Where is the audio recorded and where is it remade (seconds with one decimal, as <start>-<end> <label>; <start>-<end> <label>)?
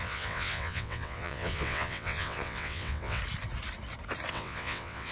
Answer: 0.0-3.2 remade; 3.2-4.3 recorded; 4.3-5.1 remade